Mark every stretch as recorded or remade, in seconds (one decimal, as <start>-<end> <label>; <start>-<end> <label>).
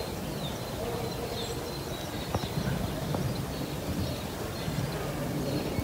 0.0-5.8 recorded